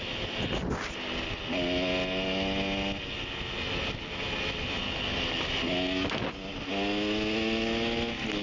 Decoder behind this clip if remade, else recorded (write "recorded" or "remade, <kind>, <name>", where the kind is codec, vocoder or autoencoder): recorded